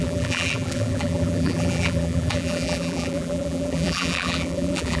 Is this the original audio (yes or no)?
no